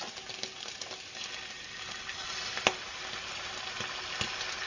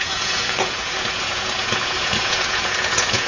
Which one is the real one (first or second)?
first